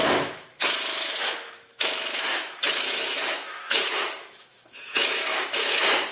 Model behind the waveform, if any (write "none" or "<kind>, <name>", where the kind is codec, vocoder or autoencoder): autoencoder, DAC-VAE